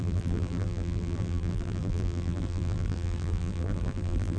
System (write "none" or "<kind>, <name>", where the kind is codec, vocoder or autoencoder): vocoder, BigVGAN v2